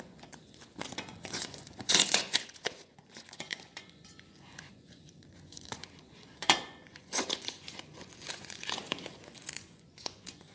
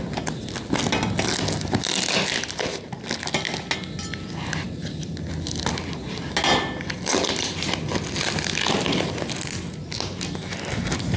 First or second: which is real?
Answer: second